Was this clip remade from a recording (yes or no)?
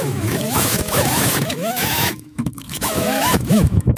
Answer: yes